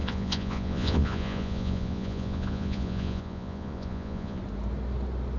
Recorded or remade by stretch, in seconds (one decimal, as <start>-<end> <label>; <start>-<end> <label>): 0.0-4.4 remade; 4.4-5.4 recorded